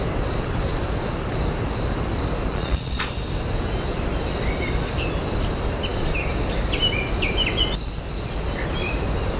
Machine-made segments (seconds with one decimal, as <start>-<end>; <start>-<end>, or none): 2.5-3.1